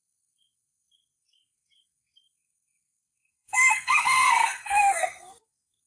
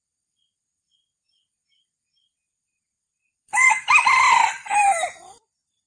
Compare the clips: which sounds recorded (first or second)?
second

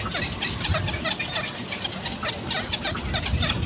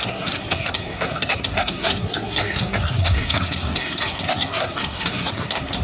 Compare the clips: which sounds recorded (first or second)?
first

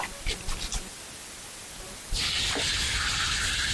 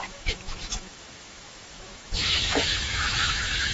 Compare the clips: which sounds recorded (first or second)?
first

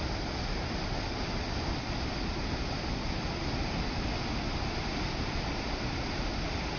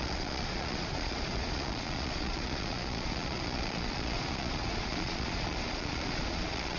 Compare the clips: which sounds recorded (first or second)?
first